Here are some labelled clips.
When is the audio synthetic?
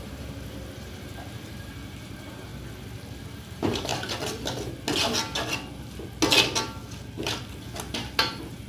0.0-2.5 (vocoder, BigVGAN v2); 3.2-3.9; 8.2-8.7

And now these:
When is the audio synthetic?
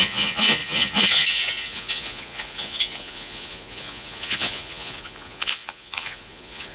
0.0-6.7 (vocoder, Vocos)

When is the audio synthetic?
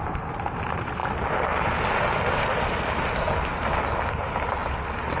0.0-1.0 (vocoder, BigVGAN v2); 4.1-4.6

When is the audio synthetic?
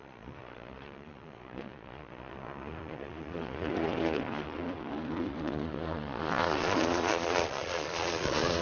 0.0-8.6 (vocoder, Vocos)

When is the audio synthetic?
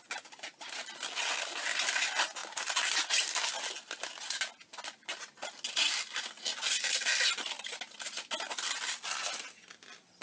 none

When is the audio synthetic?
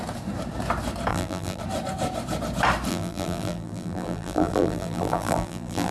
1.1-1.6 (vocoder, BigVGAN v2); 2.9-5.9